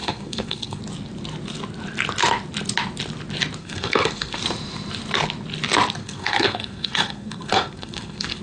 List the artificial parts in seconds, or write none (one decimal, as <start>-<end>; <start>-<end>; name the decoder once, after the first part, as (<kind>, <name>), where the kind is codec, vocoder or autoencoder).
0.0-0.8 (codec, SNAC); 3.6-4.4; 6.0-8.4